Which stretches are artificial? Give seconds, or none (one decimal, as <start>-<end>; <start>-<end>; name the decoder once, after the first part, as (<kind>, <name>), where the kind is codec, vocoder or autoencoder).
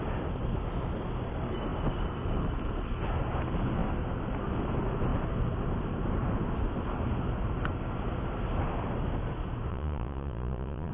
9.7-10.9 (vocoder, Vocos)